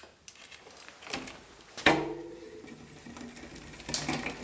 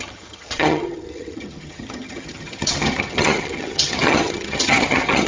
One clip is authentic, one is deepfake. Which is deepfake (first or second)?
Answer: second